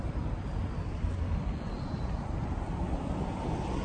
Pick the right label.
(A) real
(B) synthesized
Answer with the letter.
B